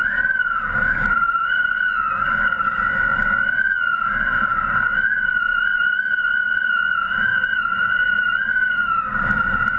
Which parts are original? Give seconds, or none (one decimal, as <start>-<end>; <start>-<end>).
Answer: 0.0-9.8